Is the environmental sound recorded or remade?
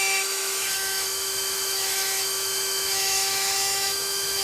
remade